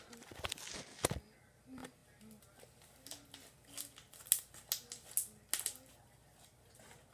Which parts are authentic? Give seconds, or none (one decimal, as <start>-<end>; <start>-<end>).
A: 0.0-7.1